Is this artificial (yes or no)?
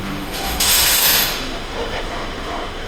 yes